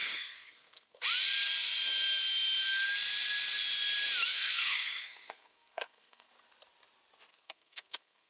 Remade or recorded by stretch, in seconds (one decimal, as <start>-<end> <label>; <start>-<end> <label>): 0.0-1.0 remade; 1.0-4.3 recorded; 4.3-6.3 remade; 6.3-7.3 recorded; 7.3-8.3 remade